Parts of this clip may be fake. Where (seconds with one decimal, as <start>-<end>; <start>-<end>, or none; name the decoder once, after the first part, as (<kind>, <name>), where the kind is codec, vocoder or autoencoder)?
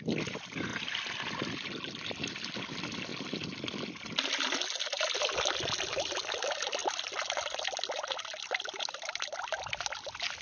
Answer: none